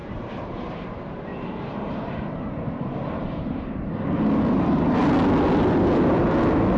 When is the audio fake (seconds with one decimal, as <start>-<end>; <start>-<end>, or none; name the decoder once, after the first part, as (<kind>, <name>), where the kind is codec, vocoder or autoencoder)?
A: 0.0-0.8 (vocoder, BigVGAN v2); 1.3-3.6